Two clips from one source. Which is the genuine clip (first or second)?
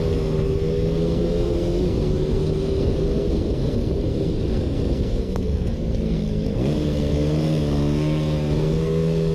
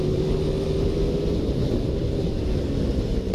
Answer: second